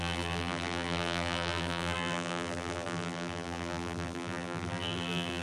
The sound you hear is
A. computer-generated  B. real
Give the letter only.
A